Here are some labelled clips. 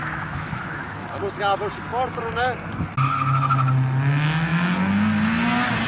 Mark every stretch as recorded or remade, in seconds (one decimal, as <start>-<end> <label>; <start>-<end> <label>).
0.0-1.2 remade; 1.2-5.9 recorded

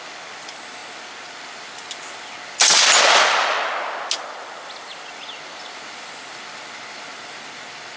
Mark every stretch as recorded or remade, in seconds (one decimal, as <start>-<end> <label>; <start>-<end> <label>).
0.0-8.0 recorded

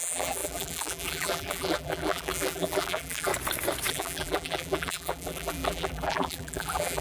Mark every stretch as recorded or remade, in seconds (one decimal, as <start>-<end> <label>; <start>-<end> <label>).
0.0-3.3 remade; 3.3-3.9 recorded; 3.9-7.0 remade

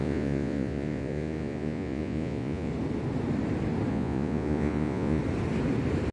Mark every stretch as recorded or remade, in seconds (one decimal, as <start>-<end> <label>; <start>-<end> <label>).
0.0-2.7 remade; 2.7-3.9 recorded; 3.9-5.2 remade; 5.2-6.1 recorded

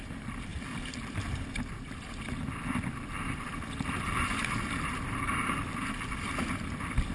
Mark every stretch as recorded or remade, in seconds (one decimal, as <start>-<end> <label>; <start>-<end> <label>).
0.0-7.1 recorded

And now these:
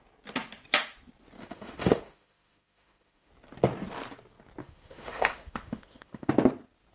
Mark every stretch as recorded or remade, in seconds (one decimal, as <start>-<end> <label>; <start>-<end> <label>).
0.0-1.4 recorded; 1.4-3.3 remade; 3.3-4.6 recorded; 4.6-6.3 remade; 6.3-6.9 recorded

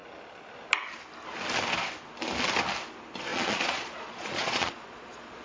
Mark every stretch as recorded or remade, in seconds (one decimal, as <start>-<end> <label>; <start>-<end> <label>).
0.0-3.3 recorded; 3.3-5.4 remade

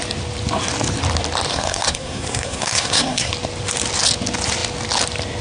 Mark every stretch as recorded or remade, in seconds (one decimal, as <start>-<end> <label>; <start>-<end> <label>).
0.0-1.5 recorded; 1.5-3.3 remade; 3.3-5.4 recorded